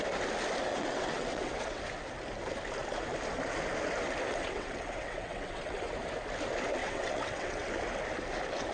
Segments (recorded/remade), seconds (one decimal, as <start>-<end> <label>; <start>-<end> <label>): 0.0-0.7 recorded; 0.7-1.8 remade; 1.8-4.3 recorded; 4.3-5.9 remade; 5.9-6.8 recorded; 6.8-7.7 remade; 7.7-8.7 recorded